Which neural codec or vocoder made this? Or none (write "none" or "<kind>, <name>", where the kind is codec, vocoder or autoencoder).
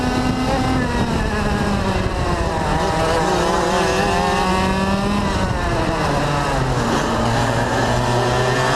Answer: none